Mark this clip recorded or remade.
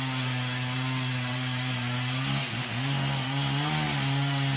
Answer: recorded